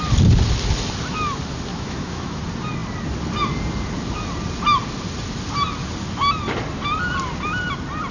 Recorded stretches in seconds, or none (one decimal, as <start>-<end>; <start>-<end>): 0.0-1.7; 2.4-8.1